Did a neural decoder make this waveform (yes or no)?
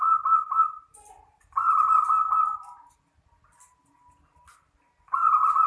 no